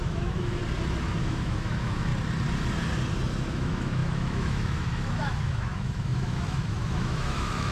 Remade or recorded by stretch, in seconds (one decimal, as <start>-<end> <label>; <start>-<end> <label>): 0.0-0.6 remade; 0.6-1.2 recorded; 1.2-2.1 remade; 2.1-3.5 recorded; 3.5-7.7 remade